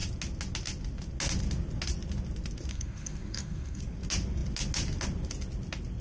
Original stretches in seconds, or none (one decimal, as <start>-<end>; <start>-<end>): 0.0-2.7; 3.8-6.0